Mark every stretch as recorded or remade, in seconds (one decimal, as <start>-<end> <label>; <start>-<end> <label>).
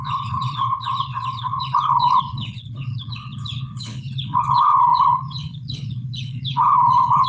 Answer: 0.0-7.3 remade